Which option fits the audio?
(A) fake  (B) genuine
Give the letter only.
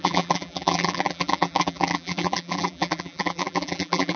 A